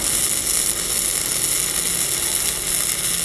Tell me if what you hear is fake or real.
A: real